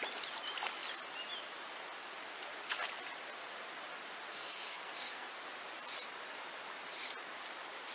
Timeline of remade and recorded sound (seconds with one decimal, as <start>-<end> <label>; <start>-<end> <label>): 0.0-4.3 recorded; 4.3-5.3 remade; 5.3-7.9 recorded